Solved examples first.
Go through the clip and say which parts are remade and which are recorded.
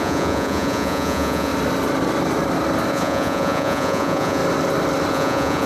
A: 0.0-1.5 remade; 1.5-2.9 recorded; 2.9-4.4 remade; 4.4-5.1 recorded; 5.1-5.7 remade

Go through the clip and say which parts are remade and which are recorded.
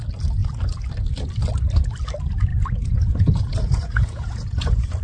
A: 0.0-2.5 recorded; 2.5-5.0 remade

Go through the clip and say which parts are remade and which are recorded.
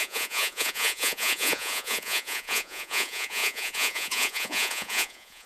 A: 0.0-5.5 remade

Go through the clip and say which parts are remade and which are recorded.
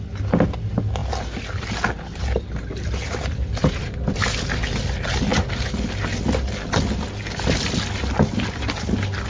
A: 0.0-9.3 recorded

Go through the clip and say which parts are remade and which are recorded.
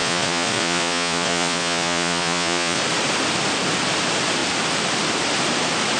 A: 0.0-2.8 remade; 2.8-6.0 recorded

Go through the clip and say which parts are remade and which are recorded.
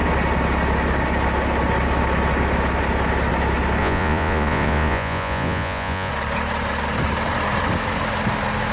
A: 0.0-3.8 recorded; 3.8-6.1 remade; 6.1-8.7 recorded